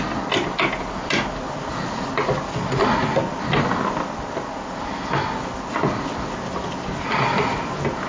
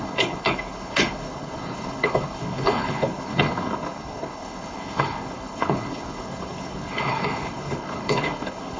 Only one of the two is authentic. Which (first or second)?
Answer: first